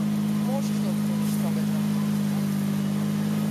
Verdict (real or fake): real